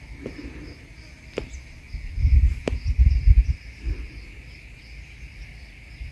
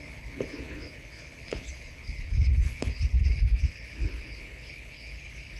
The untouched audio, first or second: first